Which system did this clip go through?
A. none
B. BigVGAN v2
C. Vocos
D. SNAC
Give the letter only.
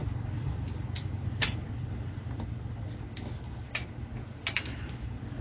A